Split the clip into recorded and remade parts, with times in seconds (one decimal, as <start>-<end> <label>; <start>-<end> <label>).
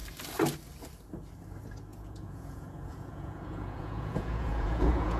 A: 0.0-1.9 recorded; 1.9-5.2 remade